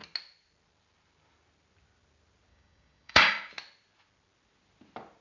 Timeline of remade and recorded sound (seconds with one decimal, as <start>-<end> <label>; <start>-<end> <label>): 0.0-2.5 recorded; 2.5-3.5 remade; 3.5-5.2 recorded